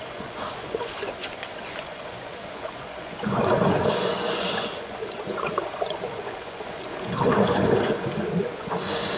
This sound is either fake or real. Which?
fake